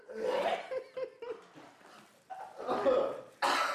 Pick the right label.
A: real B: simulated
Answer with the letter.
A